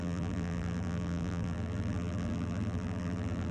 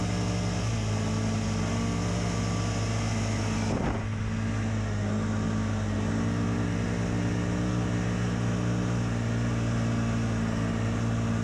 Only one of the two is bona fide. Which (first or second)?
second